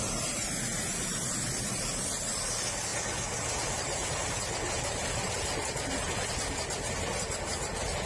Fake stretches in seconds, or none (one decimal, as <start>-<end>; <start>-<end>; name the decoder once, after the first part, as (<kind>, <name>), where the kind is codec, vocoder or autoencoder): none

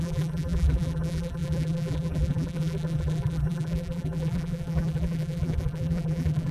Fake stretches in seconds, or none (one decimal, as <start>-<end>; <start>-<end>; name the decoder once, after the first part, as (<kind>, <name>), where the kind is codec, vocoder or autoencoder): 0.0-6.5 (vocoder, BigVGAN v2)

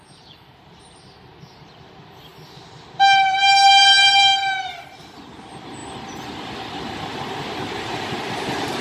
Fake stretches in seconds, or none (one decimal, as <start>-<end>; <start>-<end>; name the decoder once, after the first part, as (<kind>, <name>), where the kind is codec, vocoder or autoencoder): 0.0-2.3 (vocoder, BigVGAN v2); 3.7-5.8; 6.7-8.8

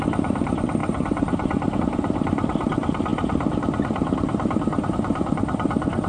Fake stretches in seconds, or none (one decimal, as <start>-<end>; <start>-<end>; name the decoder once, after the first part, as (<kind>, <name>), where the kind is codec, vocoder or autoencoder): 0.0-6.1 (vocoder, BigVGAN v2)